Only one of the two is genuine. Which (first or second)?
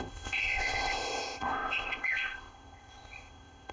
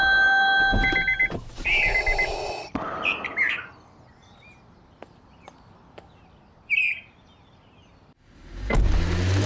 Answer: second